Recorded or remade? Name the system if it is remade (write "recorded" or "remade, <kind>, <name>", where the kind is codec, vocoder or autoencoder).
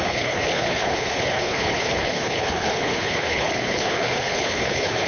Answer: remade, codec, HILCodec